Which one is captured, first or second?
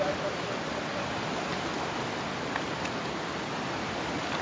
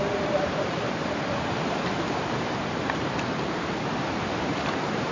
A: first